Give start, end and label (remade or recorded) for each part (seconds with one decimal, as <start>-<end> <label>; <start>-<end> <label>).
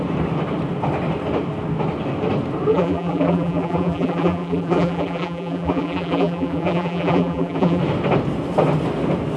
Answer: 0.0-2.7 recorded; 2.7-7.8 remade; 7.8-9.4 recorded